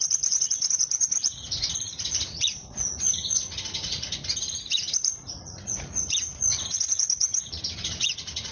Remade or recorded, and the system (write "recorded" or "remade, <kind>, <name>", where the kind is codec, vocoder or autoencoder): remade, vocoder, Vocos